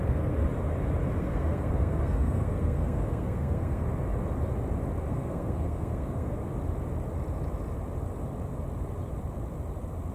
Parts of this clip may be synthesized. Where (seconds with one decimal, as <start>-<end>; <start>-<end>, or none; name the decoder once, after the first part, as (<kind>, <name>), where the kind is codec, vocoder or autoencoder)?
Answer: 0.0-0.4 (codec, SNAC); 1.2-3.8; 5.1-6.4